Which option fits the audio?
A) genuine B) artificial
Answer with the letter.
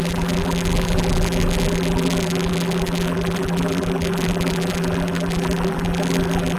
B